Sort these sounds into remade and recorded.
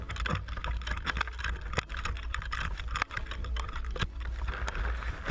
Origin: recorded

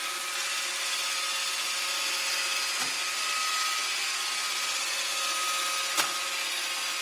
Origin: recorded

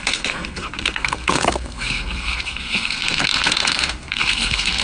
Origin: remade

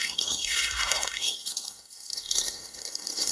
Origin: remade